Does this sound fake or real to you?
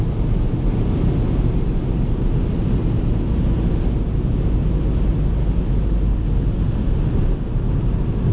real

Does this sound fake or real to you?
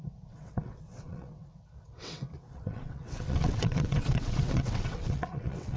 fake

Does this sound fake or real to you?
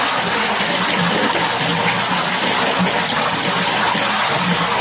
real